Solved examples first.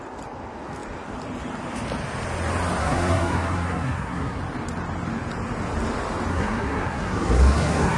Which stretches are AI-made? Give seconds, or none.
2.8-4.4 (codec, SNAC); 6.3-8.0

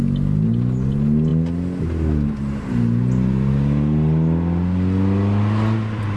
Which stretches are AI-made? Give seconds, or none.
none